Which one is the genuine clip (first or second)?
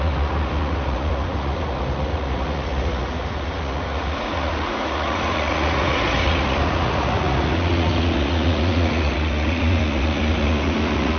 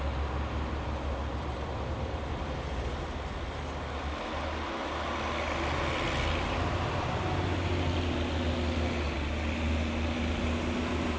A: second